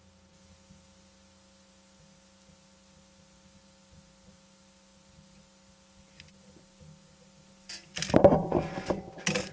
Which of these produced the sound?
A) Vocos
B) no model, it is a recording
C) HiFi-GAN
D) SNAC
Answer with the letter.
B